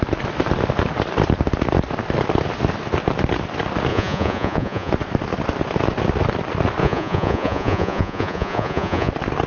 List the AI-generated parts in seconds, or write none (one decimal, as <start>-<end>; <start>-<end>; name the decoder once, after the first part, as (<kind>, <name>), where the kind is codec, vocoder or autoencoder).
3.9-4.9 (vocoder, Vocos); 6.8-9.1